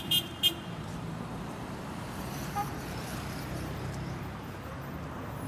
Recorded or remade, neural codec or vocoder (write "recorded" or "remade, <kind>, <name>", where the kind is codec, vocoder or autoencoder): remade, vocoder, BigVGAN v2